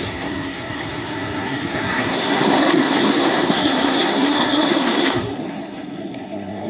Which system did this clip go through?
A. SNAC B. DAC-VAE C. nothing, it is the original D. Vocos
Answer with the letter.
A